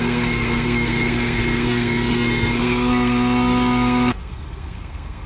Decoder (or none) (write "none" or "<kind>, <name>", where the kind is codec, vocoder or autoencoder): codec, SNAC